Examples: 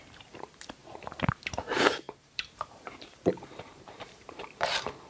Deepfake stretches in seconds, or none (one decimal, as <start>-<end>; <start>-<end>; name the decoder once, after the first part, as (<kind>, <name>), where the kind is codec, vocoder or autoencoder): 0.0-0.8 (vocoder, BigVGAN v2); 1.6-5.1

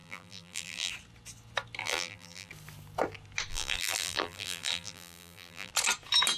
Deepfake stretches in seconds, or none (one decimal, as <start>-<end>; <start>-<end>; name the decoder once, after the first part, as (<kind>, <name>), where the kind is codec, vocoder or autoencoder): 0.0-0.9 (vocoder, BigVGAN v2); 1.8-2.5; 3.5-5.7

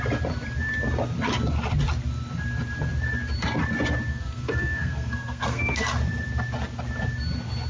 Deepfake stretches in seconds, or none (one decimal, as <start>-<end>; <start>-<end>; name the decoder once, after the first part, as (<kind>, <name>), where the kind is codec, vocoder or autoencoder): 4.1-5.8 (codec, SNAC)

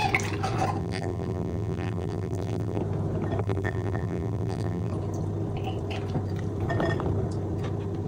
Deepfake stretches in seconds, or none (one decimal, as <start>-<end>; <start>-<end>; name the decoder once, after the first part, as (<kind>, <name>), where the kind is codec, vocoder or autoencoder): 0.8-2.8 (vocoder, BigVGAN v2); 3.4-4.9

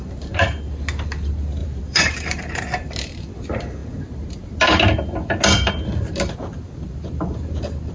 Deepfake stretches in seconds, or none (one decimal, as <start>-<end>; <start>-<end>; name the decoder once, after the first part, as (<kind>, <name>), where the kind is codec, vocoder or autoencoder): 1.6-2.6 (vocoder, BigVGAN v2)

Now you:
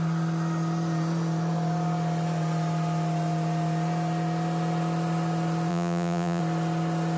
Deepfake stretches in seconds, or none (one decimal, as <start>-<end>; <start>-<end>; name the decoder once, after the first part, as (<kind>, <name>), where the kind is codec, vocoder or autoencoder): 5.7-6.4 (vocoder, Vocos)